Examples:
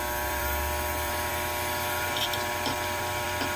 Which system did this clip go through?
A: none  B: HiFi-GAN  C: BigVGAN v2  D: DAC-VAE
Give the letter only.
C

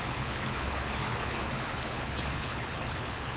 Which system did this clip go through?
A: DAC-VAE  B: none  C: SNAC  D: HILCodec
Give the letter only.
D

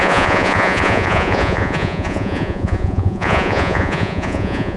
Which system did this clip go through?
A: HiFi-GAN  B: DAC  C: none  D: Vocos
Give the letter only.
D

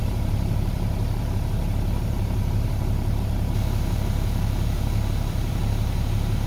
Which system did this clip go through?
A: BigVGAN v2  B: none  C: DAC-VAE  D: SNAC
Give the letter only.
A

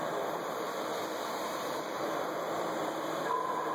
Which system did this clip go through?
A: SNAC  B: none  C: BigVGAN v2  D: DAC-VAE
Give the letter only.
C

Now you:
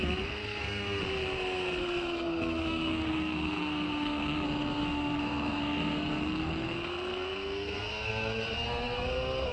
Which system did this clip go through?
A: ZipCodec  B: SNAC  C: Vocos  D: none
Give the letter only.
B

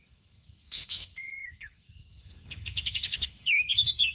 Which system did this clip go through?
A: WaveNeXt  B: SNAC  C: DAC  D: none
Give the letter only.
B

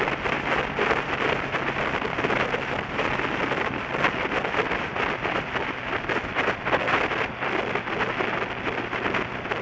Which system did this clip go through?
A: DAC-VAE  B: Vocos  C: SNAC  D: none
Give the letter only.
D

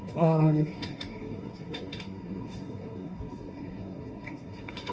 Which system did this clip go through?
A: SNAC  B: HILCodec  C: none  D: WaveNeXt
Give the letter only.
A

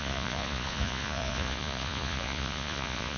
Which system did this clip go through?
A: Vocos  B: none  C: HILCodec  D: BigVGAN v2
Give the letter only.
A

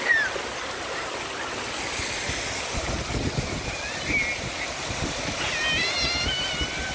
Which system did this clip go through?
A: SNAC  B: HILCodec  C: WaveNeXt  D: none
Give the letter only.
D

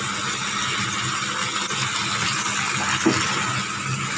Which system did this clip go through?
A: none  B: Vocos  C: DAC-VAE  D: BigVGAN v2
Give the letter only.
A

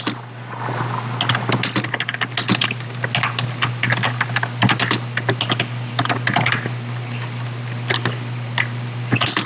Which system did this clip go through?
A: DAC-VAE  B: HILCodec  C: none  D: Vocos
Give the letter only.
C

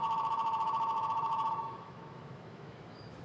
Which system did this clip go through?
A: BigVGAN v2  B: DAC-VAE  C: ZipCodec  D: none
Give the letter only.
B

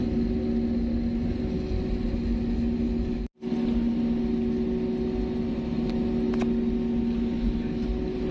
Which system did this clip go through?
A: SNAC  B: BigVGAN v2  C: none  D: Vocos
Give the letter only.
C